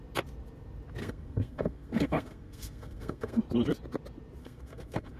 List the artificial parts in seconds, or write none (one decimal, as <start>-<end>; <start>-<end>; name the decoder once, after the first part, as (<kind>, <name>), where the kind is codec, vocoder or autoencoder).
1.0-3.4 (codec, SNAC); 4.4-5.2